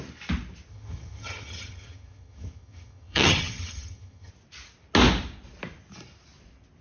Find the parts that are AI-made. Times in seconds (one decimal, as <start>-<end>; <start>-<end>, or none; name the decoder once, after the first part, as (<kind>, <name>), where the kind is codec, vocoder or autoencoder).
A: 0.7-4.3 (vocoder, HiFi-GAN)